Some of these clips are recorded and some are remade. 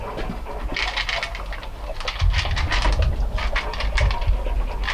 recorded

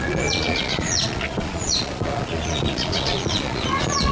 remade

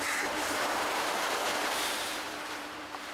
remade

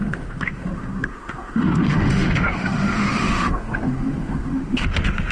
remade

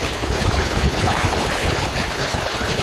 remade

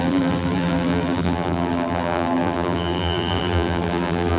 remade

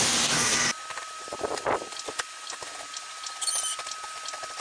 recorded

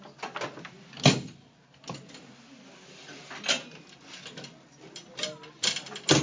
recorded